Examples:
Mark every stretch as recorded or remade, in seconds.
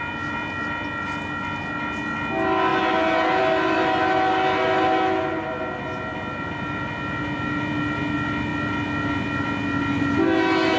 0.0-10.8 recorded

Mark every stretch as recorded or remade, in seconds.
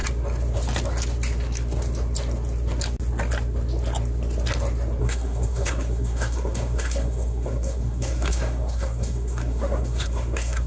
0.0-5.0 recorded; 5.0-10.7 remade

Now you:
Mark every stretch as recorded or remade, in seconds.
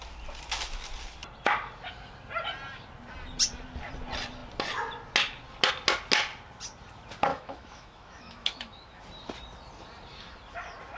0.0-7.3 recorded; 7.3-9.0 remade; 9.0-11.0 recorded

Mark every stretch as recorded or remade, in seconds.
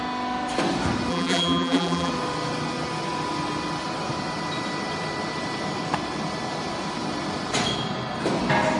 0.0-1.1 recorded; 1.1-2.1 remade; 2.1-8.8 recorded